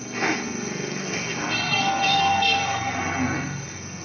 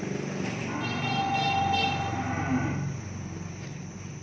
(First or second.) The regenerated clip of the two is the first